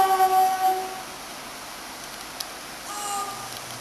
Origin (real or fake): real